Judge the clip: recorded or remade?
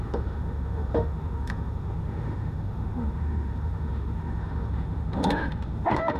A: remade